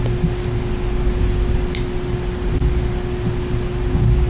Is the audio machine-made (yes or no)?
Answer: no